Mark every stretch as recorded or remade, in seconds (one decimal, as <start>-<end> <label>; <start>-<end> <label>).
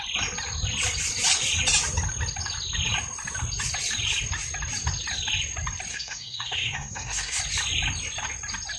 0.0-5.9 recorded; 5.9-7.4 remade; 7.4-8.8 recorded